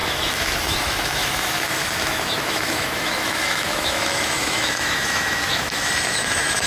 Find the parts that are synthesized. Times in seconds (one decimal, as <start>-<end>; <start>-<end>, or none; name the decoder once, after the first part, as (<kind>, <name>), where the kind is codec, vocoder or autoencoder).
0.0-6.7 (autoencoder, DAC-VAE)